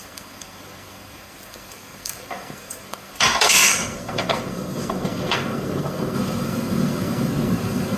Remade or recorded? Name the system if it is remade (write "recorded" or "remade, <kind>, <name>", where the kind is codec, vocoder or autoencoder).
remade, codec, SNAC